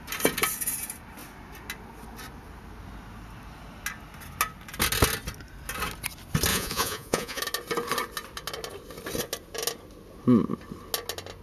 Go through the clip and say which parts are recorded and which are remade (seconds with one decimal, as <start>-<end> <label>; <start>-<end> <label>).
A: 0.0-6.5 recorded; 6.5-7.4 remade; 7.4-11.4 recorded